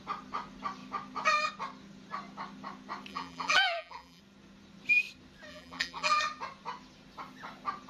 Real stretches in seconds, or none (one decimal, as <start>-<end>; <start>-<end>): 0.0-3.1; 4.2-5.5; 6.2-7.9